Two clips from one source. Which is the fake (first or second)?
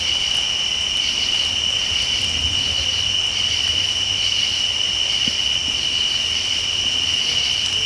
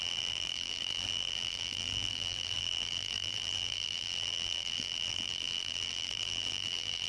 second